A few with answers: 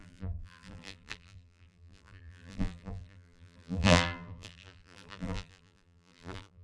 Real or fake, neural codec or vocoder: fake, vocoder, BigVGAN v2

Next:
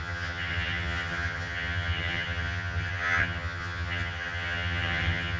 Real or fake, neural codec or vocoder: fake, vocoder, HiFi-GAN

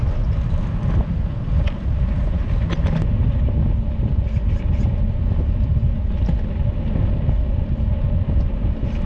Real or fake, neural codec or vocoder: real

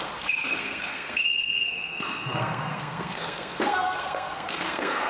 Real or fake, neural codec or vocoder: fake, codec, SNAC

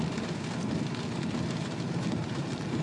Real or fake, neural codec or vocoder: real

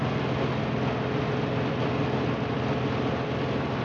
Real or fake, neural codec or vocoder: real